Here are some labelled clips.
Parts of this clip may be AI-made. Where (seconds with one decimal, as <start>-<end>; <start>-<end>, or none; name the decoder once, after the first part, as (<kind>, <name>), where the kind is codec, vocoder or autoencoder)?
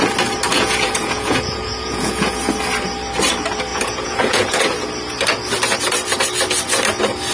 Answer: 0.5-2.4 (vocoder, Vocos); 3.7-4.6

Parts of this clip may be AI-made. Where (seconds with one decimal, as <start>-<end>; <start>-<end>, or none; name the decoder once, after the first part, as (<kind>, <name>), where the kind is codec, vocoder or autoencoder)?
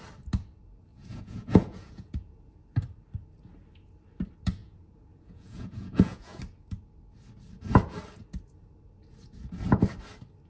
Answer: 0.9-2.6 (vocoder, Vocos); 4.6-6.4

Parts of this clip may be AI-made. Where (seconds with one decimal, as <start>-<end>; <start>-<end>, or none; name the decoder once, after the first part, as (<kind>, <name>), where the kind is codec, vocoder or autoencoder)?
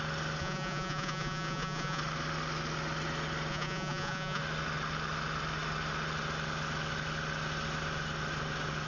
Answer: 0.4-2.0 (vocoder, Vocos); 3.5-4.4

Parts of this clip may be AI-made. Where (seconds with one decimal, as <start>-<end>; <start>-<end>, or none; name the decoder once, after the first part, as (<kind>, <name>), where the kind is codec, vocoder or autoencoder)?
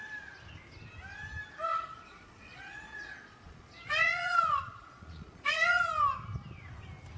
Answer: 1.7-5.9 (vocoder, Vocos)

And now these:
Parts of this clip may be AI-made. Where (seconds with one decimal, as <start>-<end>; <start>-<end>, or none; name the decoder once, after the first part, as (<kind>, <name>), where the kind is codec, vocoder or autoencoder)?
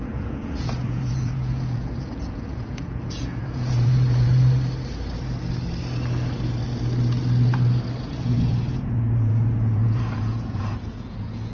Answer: 0.0-4.3 (vocoder, Vocos); 8.0-11.5